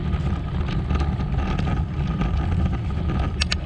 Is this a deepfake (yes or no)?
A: no